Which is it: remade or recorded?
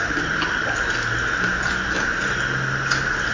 recorded